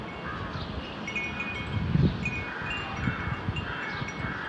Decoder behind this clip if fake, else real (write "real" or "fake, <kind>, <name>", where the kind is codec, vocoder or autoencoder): real